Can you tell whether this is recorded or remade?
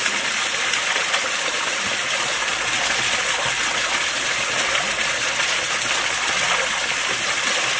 recorded